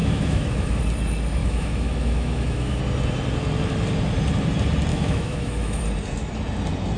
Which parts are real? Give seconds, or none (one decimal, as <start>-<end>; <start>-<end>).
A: 0.8-1.4; 2.8-4.9; 5.8-7.0